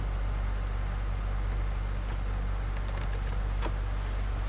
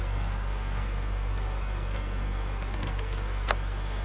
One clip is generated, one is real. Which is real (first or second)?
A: first